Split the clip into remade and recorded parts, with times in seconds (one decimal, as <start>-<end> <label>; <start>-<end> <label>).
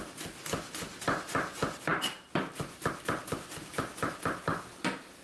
0.0-5.2 recorded